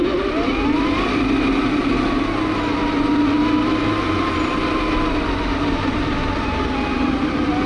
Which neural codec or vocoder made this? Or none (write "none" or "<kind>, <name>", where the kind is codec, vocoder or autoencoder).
none